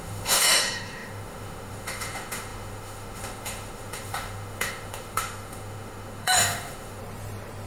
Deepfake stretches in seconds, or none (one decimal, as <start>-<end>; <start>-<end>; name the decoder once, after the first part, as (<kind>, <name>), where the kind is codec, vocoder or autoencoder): 0.0-7.0 (autoencoder, DAC-VAE)